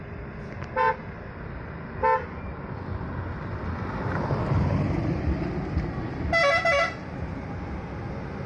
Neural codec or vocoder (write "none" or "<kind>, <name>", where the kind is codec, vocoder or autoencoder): none